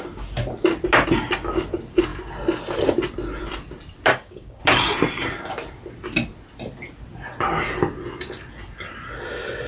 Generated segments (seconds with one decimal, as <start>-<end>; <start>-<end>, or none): 4.1-4.6